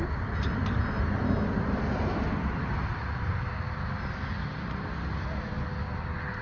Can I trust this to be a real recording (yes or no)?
yes